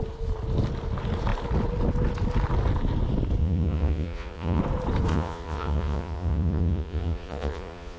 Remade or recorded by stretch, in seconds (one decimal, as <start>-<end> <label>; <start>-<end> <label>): 0.0-3.4 recorded; 3.4-4.6 remade; 4.6-5.1 recorded; 5.1-8.0 remade